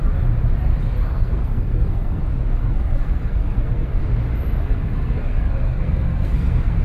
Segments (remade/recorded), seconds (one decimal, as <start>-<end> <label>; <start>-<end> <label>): 0.0-1.0 recorded; 1.0-2.2 remade; 2.2-2.6 recorded; 2.6-4.0 remade; 4.0-4.6 recorded; 4.6-6.8 remade